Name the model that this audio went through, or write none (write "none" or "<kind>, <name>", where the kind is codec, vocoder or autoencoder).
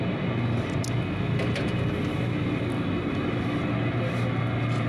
none